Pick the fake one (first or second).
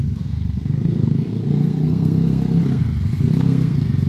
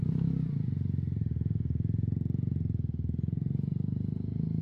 first